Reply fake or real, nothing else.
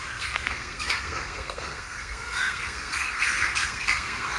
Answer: fake